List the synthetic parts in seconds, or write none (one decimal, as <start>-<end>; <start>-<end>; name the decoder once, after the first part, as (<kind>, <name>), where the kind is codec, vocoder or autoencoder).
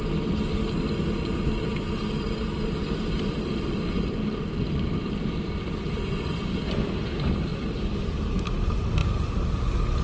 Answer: 1.7-6.8 (vocoder, BigVGAN v2); 7.5-8.3